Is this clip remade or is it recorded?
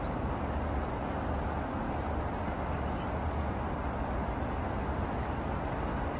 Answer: recorded